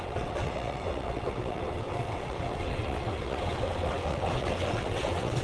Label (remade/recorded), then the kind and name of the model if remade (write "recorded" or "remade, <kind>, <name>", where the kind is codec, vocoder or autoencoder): remade, vocoder, WaveNeXt